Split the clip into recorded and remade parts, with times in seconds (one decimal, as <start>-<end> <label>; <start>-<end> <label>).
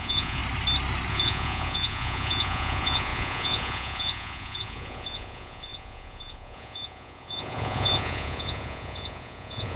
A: 0.0-0.4 remade; 0.4-1.1 recorded; 1.1-9.8 remade